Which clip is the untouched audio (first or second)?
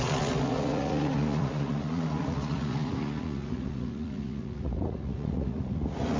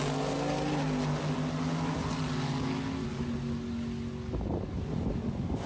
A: second